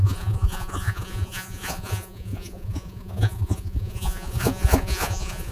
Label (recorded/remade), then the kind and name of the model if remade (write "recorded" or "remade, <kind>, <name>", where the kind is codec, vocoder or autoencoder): remade, vocoder, Vocos